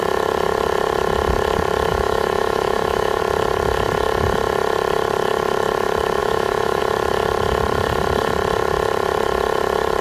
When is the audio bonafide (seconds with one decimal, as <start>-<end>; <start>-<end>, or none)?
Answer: 0.0-1.9; 3.2-6.2; 6.8-10.0

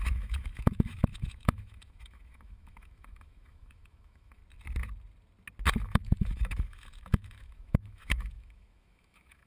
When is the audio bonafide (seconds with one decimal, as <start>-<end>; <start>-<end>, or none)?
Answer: 4.4-5.8

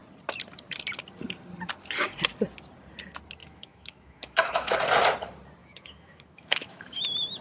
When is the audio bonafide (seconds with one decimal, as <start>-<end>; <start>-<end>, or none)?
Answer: 0.0-3.4; 4.8-5.6; 7.0-7.4

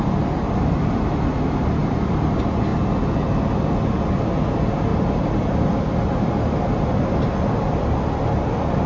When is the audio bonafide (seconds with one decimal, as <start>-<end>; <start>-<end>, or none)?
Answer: 0.0-8.9

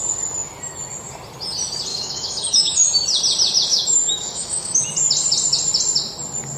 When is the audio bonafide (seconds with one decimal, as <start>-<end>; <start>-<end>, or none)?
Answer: 0.0-1.9; 2.9-3.7; 4.8-6.6

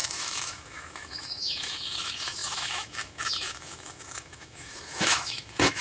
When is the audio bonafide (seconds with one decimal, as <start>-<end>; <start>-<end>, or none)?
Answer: none